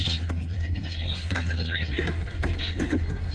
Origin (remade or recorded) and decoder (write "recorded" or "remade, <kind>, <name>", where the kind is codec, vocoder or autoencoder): remade, codec, SNAC